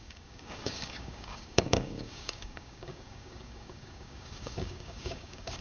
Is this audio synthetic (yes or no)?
yes